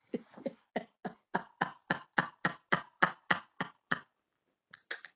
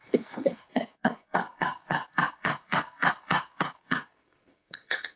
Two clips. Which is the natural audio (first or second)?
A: first